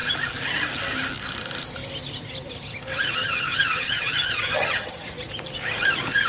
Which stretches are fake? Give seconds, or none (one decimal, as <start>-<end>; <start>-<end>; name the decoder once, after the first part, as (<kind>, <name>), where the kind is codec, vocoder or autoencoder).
3.2-5.1 (vocoder, HiFi-GAN)